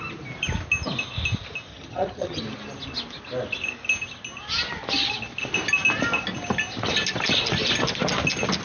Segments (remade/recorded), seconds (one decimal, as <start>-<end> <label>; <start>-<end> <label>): 0.0-1.7 recorded; 1.7-2.4 remade; 2.4-8.6 recorded